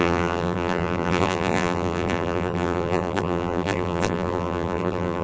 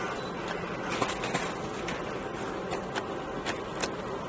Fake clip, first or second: first